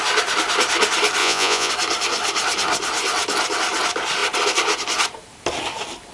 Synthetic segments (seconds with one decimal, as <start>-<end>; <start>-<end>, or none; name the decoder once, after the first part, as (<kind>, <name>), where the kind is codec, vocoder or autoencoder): 1.2-1.7 (vocoder, Vocos)

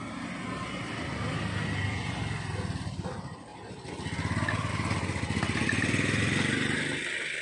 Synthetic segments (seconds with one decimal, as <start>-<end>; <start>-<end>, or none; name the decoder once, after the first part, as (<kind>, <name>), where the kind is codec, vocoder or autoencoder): none

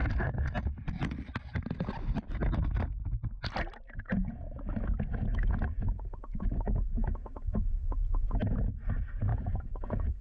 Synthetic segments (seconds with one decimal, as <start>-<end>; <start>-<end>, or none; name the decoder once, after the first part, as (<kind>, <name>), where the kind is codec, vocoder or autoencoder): 9.3-10.2 (vocoder, Vocos)

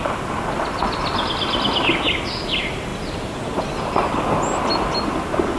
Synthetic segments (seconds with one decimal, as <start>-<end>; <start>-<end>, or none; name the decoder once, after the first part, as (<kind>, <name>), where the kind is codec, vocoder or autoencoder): none

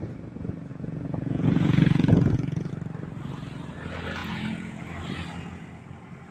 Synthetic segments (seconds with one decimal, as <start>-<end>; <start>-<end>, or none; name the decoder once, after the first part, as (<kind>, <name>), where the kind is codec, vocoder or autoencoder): 0.7-2.7 (vocoder, Vocos); 4.2-4.8